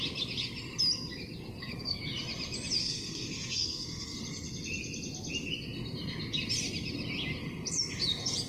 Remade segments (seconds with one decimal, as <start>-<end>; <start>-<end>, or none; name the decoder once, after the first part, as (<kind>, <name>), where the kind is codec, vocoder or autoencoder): 1.5-2.0 (codec, SNAC); 2.8-4.2